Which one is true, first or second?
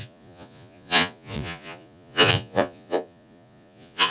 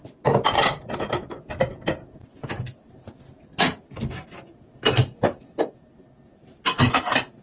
second